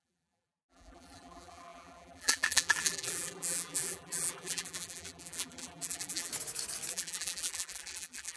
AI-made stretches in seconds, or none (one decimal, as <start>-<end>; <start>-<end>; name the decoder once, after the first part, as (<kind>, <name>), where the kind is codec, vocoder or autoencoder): 0.0-6.3 (vocoder, BigVGAN v2); 6.9-8.4